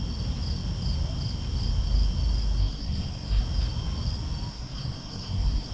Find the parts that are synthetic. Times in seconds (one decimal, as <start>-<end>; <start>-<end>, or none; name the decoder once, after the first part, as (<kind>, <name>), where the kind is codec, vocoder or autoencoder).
2.6-3.4 (codec, SNAC); 4.5-5.7